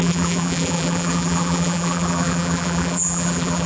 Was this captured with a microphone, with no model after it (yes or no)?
no